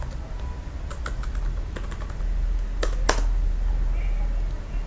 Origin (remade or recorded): recorded